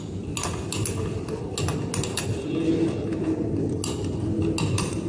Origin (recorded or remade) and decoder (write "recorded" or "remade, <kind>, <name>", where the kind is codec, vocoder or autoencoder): recorded